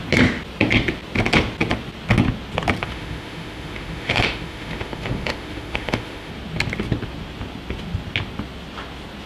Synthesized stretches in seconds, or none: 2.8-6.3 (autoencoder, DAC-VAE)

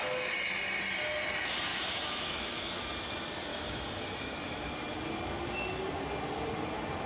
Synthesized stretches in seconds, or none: 1.7-2.7 (autoencoder, DAC-VAE); 3.5-4.7

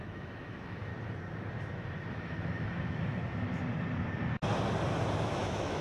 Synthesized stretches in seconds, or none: 0.0-0.9 (autoencoder, DAC-VAE); 2.1-3.2; 5.2-5.8

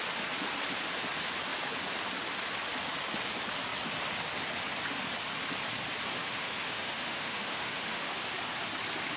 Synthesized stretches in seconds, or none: 6.1-8.1 (autoencoder, DAC-VAE)

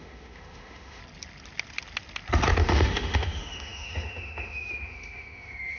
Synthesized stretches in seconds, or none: 0.0-1.0 (autoencoder, DAC-VAE); 2.6-5.8

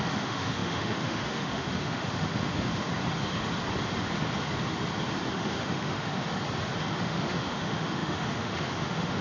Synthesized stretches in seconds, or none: 0.0-2.9 (autoencoder, DAC-VAE); 5.3-6.3; 6.9-9.2

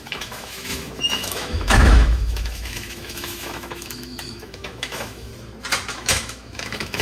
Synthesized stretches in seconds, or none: 0.0-5.3 (autoencoder, DAC-VAE); 5.9-7.0

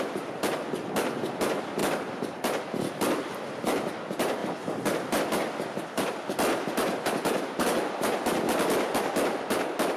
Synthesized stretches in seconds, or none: none